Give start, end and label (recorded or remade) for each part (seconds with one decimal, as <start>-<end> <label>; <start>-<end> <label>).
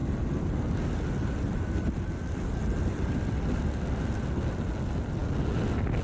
0.0-6.0 recorded